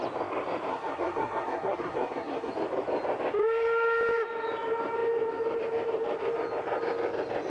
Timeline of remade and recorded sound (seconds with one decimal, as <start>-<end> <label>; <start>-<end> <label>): 0.0-0.7 recorded; 0.7-2.5 remade; 2.5-7.5 recorded